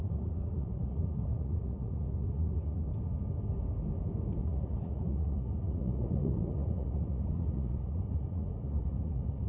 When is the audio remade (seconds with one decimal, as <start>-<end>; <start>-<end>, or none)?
0.0-2.9; 4.4-9.5